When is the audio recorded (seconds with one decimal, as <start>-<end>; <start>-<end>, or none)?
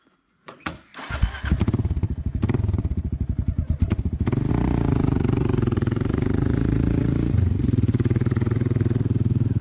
0.9-4.5